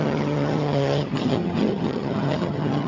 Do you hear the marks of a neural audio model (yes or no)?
yes